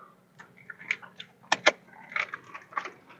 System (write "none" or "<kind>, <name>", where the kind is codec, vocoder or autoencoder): none